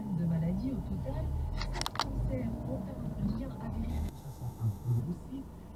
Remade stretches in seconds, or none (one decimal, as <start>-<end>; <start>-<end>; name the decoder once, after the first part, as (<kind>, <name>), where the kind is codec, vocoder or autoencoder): 3.9-5.0 (autoencoder, DAC-VAE)